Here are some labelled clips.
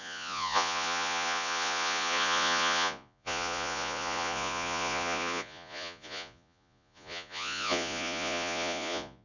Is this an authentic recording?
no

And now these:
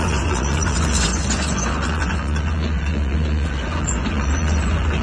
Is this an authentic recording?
no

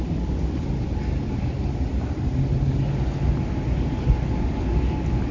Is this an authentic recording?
yes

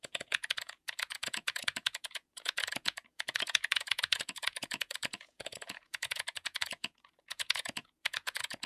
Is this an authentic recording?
no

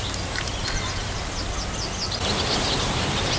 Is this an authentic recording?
yes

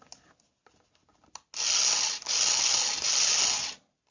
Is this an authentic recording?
yes